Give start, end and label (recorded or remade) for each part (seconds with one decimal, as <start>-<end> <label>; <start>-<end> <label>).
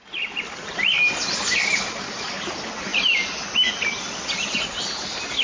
0.0-5.4 recorded